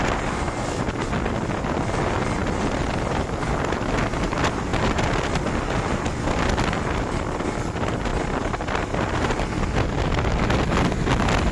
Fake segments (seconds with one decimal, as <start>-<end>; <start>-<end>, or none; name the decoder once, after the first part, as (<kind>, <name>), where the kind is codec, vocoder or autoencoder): none